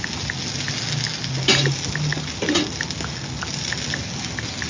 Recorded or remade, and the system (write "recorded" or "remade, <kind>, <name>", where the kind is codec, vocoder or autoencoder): recorded